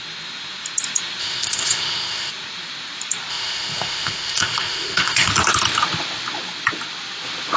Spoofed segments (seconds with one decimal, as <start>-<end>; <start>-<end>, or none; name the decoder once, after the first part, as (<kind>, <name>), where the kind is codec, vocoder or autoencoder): 1.2-2.3 (codec, ZipCodec); 3.3-5.3